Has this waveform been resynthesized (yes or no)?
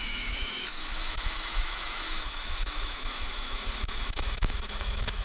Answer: yes